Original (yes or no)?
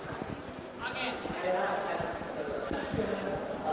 no